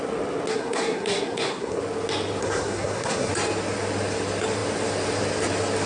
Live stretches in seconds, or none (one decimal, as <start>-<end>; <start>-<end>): 0.0-0.5; 1.8-2.4; 3.3-5.9

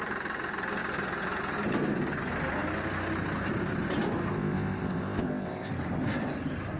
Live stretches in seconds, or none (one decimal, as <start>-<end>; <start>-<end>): 0.0-4.3; 5.7-6.8

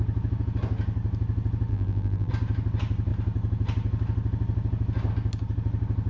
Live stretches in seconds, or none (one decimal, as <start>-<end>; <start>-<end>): 0.0-1.7; 2.3-6.1

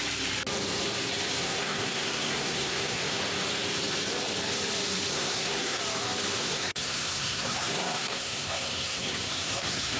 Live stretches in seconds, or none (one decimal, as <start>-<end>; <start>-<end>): 0.0-1.4; 3.2-5.1; 5.8-6.4